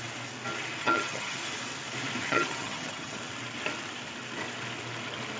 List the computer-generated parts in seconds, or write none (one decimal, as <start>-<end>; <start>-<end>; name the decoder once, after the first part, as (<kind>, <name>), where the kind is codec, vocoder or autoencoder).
0.8-1.4 (vocoder, HiFi-GAN); 2.2-3.2